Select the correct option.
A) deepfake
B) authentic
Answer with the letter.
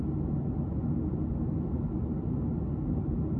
B